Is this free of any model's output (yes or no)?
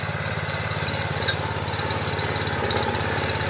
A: yes